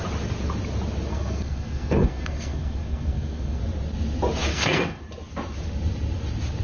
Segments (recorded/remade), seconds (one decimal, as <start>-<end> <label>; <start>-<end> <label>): 0.0-1.1 recorded; 1.1-3.6 remade; 3.6-4.5 recorded; 4.5-5.0 remade; 5.0-6.6 recorded